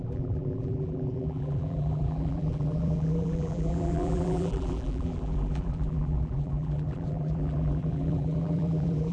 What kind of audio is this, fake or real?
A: fake